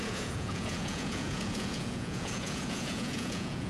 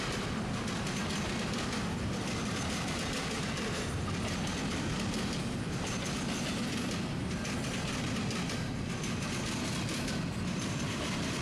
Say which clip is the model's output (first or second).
first